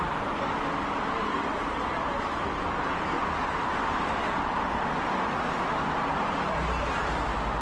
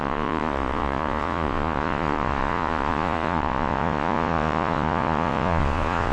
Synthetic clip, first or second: second